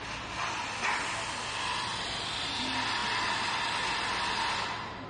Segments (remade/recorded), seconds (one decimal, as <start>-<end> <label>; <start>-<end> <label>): 0.0-1.9 recorded; 1.9-2.6 remade; 2.6-3.0 recorded; 3.0-3.5 remade; 3.5-5.1 recorded